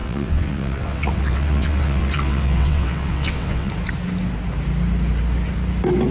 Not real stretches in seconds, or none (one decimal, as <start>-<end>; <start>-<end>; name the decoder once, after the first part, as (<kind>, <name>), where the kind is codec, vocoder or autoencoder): 0.0-3.7 (vocoder, WaveNeXt)